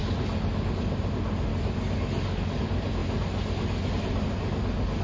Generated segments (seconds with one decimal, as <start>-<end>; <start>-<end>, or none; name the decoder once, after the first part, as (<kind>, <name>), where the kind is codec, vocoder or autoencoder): 1.5-2.6 (codec, DAC)